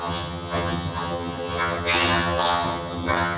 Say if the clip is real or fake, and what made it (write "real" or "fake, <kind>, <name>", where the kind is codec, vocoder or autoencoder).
fake, vocoder, HiFi-GAN